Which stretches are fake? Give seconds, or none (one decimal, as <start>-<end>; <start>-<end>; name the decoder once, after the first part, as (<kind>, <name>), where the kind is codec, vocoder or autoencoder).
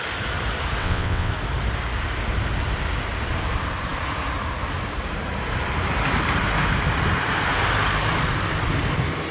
0.8-1.3 (vocoder, WaveNeXt)